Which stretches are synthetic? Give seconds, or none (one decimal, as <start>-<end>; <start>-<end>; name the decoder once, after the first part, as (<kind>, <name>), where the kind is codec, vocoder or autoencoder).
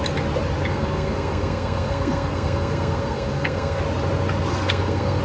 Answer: 0.7-3.8 (codec, SNAC); 4.5-5.2